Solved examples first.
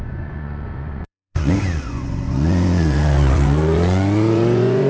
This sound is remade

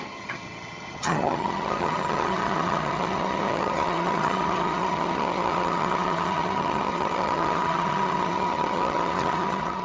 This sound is remade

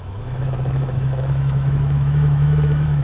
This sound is remade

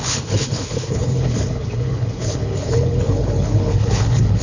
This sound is remade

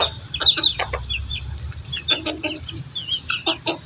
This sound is recorded